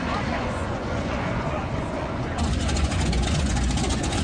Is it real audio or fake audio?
fake